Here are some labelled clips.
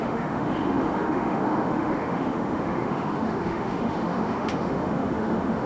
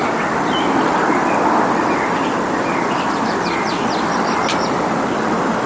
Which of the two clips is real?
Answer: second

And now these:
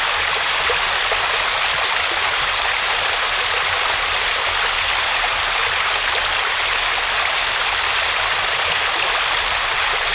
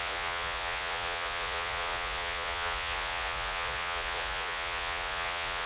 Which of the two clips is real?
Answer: first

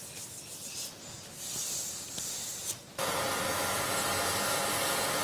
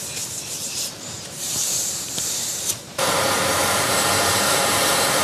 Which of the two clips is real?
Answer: first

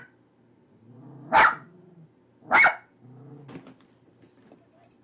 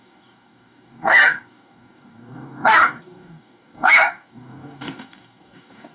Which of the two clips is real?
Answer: first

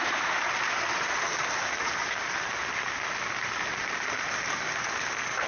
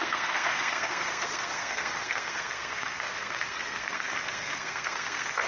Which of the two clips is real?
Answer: first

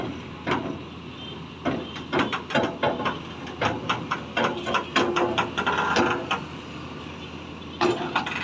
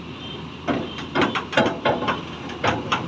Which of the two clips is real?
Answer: first